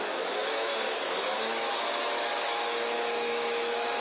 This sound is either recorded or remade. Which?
remade